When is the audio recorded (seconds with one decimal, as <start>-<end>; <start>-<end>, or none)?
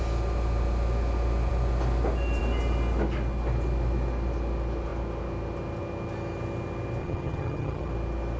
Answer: 0.0-7.0; 7.9-8.4